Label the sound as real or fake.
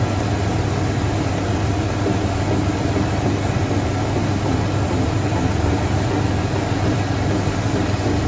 real